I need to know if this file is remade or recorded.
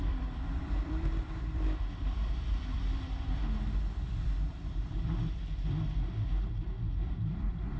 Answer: remade